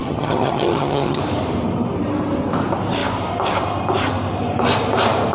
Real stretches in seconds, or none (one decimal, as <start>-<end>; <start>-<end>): 1.2-5.3